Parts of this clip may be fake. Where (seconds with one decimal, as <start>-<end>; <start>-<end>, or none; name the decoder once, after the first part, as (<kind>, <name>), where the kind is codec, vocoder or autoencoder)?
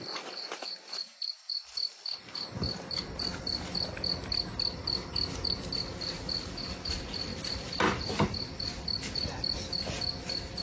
none